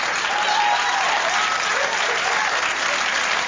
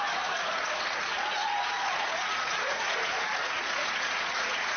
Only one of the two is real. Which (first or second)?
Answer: first